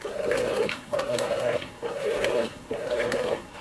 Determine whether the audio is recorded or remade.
remade